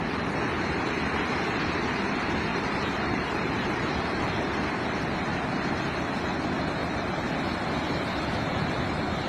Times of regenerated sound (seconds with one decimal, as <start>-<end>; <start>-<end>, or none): 2.5-4.0; 5.3-5.8; 6.8-7.3